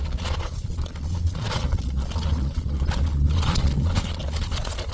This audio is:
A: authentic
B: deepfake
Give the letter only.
B